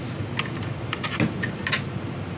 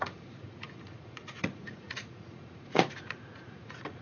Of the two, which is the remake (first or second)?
second